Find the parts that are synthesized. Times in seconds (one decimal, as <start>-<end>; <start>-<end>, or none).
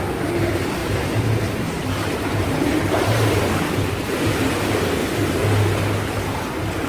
0.8-4.6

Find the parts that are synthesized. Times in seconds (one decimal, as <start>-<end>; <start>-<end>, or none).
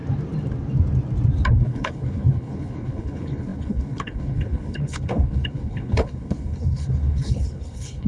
1.5-8.1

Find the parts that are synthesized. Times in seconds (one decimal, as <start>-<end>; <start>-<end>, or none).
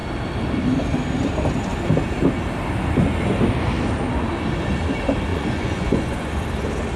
5.3-6.3